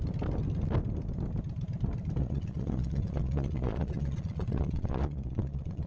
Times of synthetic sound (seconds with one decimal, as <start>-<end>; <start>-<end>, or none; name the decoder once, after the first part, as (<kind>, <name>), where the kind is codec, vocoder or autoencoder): 2.2-5.9 (vocoder, Vocos)

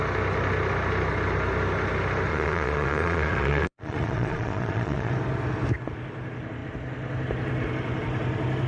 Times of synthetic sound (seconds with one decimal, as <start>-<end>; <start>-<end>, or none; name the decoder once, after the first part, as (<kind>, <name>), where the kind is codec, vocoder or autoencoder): 2.3-5.1 (vocoder, Vocos)

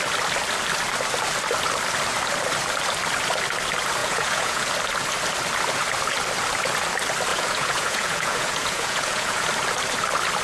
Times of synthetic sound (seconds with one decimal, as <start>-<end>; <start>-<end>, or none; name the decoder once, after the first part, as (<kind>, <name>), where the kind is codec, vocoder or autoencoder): 4.0-4.7 (vocoder, Vocos); 7.3-9.5

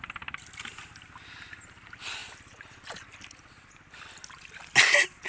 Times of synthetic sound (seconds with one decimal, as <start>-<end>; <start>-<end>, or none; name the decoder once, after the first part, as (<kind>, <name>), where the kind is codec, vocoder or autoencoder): none

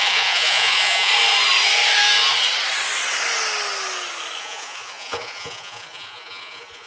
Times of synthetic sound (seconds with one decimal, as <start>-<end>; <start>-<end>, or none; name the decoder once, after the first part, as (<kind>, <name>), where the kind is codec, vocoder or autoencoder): 0.0-1.1 (vocoder, Vocos); 4.4-6.9